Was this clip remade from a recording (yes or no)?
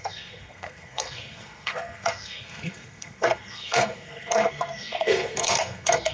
yes